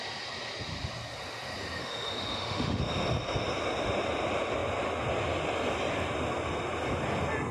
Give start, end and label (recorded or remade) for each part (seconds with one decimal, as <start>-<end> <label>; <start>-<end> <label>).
0.0-1.8 recorded; 1.8-2.8 remade; 2.8-7.5 recorded